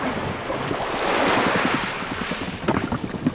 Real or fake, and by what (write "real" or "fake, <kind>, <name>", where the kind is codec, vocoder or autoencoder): real